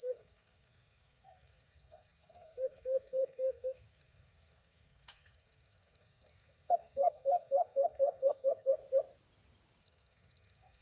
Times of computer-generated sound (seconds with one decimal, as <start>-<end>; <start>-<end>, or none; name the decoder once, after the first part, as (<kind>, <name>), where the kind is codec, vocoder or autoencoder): 0.0-8.8 (codec, SNAC); 9.8-10.8